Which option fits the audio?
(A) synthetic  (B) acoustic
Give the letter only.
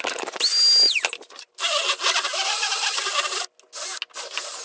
B